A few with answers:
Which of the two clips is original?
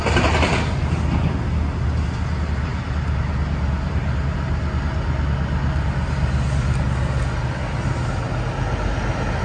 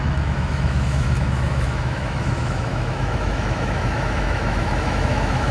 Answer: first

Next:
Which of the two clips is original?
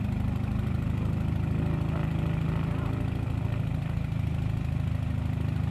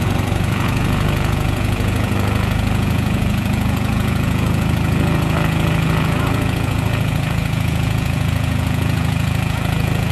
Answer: first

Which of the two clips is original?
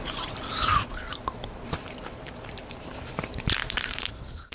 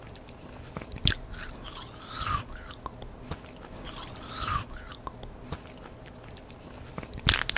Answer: second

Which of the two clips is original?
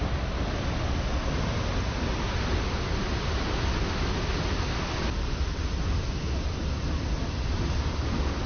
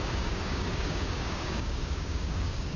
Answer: first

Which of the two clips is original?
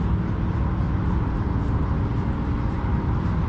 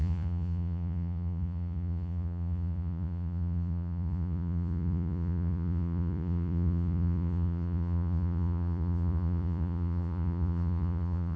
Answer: first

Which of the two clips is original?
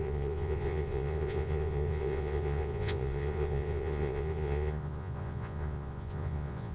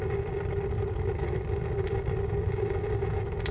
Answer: second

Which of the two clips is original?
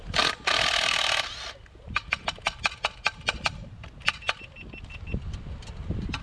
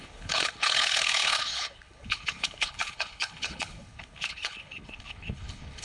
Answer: first